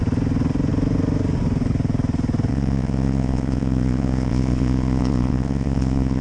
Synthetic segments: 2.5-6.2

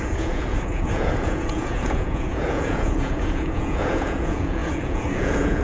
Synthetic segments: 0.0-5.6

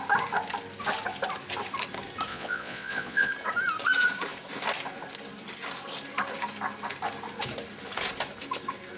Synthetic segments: 2.3-3.3

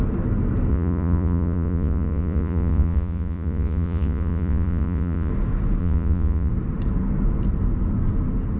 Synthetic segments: 0.7-5.3; 5.8-6.5

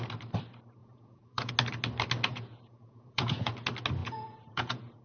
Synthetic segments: 0.8-1.5; 2.3-3.5; 4.0-5.0

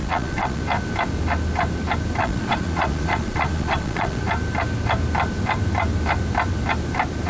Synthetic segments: 0.0-0.6; 2.2-4.2

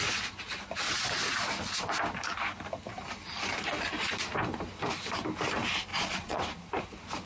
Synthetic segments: 5.9-6.4

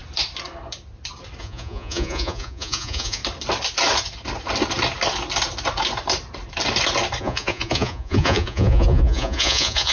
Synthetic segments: 1.4-3.2; 7.2-9.9